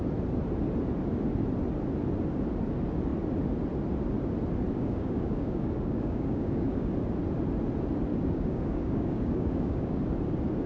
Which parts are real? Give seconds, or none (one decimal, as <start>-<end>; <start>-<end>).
0.0-4.7; 6.9-8.1; 10.0-10.7